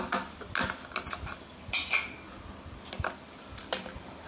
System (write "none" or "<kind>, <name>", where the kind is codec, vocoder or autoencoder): none